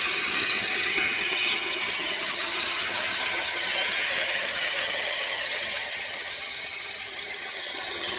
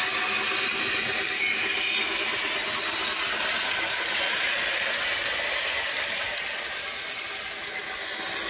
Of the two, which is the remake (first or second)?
first